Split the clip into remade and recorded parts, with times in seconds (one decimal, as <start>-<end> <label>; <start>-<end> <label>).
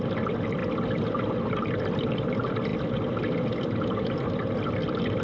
0.0-0.6 remade; 0.6-1.4 recorded; 1.4-2.7 remade; 2.7-4.0 recorded; 4.0-5.2 remade